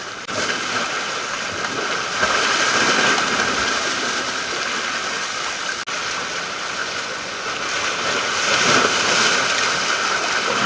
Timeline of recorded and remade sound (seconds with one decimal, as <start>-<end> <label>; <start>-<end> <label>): 0.0-6.8 recorded; 6.8-7.5 remade; 7.5-10.7 recorded